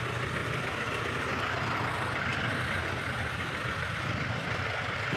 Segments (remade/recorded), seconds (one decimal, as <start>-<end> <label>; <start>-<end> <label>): 0.0-0.4 recorded; 0.4-1.1 remade; 1.1-2.3 recorded; 2.3-4.8 remade; 4.8-5.2 recorded